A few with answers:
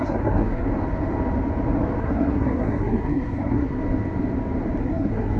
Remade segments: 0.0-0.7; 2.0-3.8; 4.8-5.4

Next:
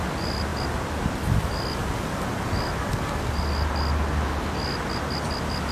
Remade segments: none

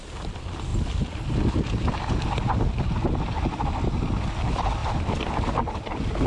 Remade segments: 0.7-1.3; 4.8-6.3

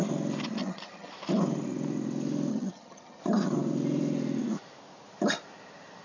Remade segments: 0.6-1.1; 2.5-3.2

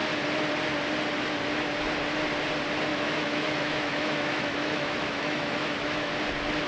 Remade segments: 2.9-6.1

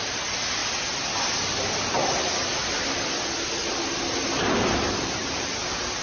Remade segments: none

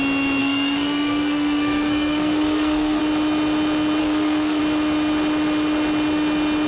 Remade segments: 0.4-3.0; 4.0-4.6

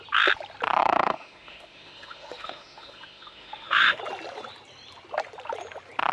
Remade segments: 0.8-4.0